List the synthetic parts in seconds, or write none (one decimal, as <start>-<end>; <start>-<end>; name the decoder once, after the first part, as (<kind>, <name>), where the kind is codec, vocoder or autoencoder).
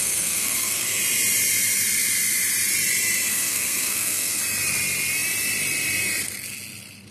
0.0-1.0 (codec, SNAC); 3.3-4.4